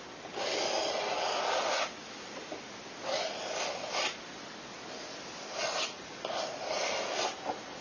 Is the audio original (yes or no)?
yes